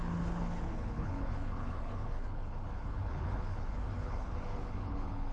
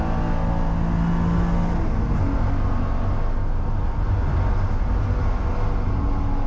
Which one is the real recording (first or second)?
second